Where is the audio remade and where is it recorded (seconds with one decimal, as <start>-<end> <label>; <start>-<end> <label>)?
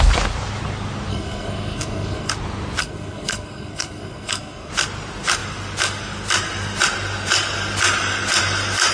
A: 0.0-1.1 recorded; 1.1-2.3 remade; 2.3-2.8 recorded; 2.8-4.7 remade; 4.7-8.9 recorded